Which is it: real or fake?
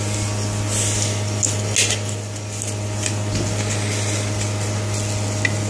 real